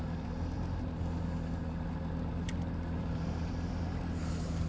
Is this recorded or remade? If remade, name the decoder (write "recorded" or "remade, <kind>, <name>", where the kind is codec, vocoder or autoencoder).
recorded